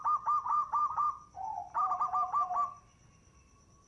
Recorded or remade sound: recorded